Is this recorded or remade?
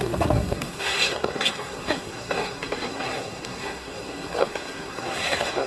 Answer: remade